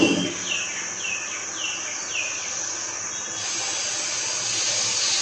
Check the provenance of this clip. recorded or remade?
recorded